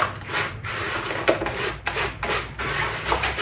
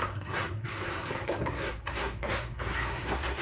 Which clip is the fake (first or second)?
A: second